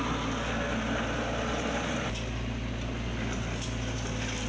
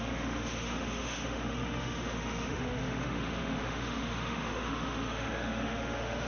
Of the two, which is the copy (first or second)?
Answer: second